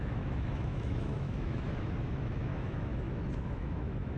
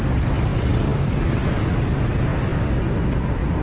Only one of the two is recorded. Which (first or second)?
second